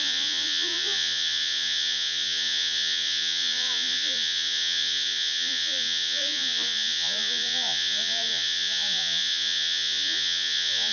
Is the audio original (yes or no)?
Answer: no